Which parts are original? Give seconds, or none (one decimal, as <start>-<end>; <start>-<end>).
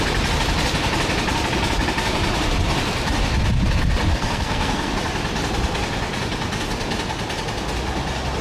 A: 0.0-4.1; 4.9-8.4